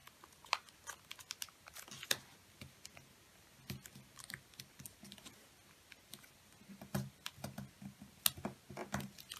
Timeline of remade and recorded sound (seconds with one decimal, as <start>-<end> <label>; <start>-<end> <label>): 0.0-9.4 recorded